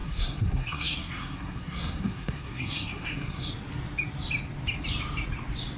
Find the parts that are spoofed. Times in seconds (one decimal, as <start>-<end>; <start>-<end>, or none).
0.0-3.5